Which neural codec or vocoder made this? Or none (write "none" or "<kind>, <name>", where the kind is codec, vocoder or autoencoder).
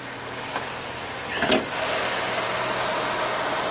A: none